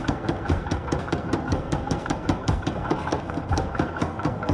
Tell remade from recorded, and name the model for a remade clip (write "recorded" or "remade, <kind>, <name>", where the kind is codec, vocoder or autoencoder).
remade, codec, SNAC